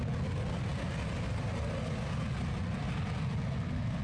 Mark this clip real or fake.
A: real